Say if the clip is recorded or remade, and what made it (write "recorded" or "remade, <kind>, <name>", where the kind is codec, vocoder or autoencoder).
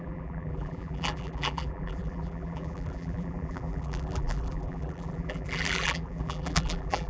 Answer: remade, vocoder, BigVGAN v2